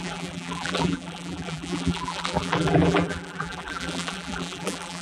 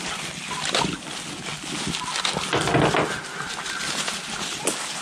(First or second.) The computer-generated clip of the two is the first